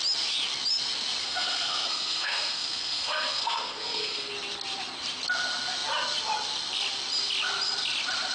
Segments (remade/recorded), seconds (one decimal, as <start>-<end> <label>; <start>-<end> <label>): 0.0-1.2 recorded; 1.2-4.3 remade; 4.3-8.3 recorded